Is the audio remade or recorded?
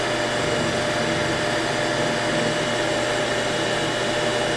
recorded